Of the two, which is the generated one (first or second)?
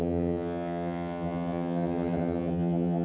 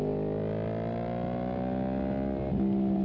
first